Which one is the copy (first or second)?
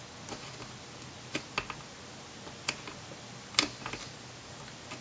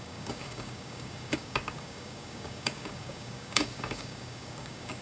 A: second